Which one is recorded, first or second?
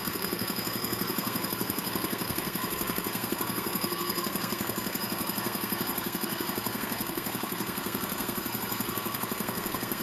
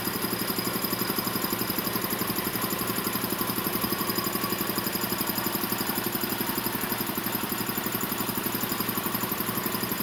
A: second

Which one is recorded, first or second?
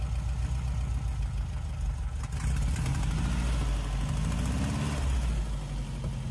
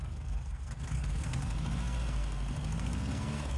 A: first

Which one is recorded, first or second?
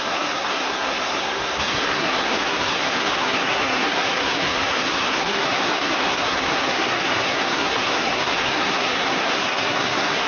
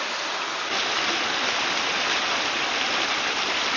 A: second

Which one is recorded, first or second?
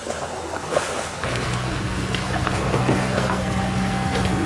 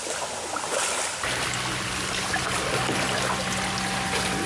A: second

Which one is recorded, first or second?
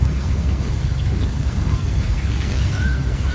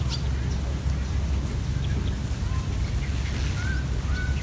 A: second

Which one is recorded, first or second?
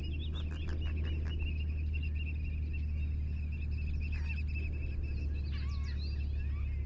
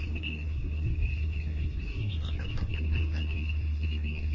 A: first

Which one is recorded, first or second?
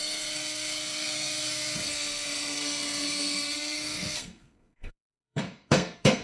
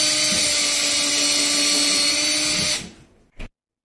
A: second